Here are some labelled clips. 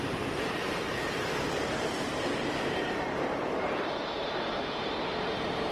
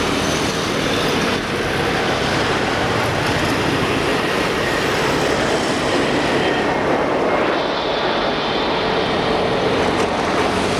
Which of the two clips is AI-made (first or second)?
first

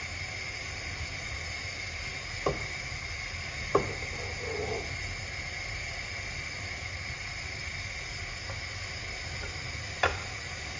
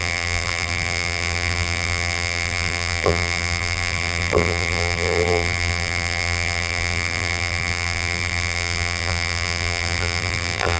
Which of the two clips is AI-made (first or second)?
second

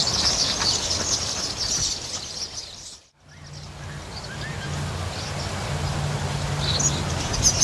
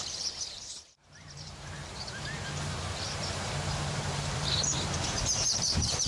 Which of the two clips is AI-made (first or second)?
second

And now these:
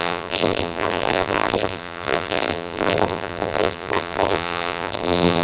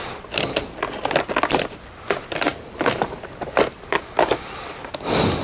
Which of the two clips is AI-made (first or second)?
first